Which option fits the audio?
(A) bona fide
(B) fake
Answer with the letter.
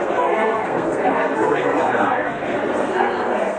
B